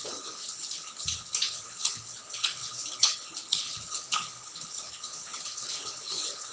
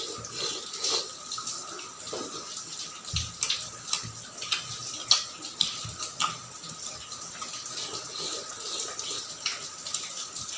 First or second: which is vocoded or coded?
first